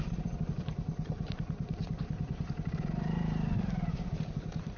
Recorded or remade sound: remade